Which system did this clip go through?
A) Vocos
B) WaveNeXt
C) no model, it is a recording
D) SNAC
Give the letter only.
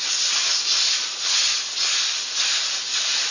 C